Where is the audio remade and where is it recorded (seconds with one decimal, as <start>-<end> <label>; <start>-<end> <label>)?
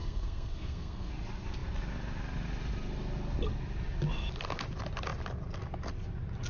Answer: 0.0-1.1 remade; 1.1-6.5 recorded